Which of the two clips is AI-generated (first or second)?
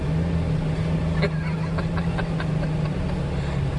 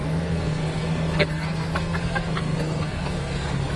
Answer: second